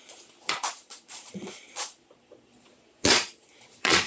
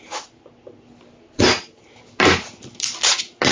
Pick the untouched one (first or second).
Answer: second